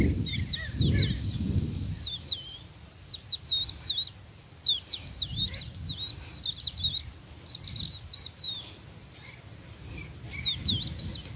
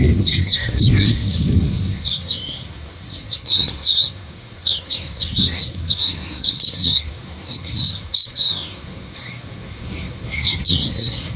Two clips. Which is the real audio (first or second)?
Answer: first